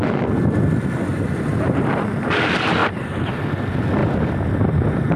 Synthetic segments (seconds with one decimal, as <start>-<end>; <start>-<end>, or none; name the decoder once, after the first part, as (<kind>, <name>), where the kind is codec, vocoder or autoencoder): 1.1-2.3 (vocoder, BigVGAN v2); 2.8-3.3